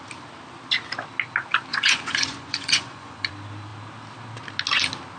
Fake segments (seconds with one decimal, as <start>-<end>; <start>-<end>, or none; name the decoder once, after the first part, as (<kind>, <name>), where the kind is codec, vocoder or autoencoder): 1.7-3.3 (vocoder, Vocos)